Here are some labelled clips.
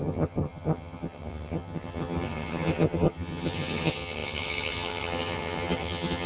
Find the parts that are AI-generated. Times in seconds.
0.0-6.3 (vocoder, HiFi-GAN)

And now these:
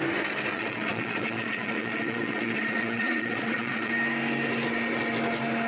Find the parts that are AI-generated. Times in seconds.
0.5-3.9 (vocoder, Vocos)